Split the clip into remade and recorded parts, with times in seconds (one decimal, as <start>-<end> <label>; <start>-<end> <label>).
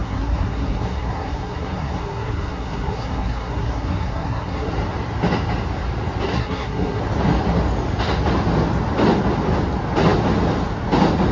0.0-4.7 remade; 4.7-6.3 recorded; 6.3-7.0 remade; 7.0-11.3 recorded